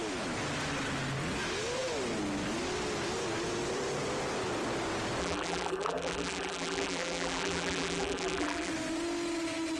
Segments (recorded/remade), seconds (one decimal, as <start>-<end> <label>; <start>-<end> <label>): 0.0-5.2 recorded; 5.2-8.7 remade; 8.7-9.8 recorded